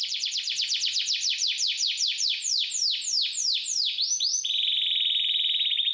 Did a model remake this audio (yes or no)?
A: no